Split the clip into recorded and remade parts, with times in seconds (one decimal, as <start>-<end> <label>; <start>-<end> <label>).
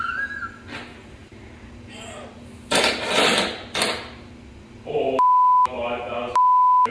0.0-6.9 recorded